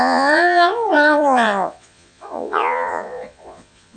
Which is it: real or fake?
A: fake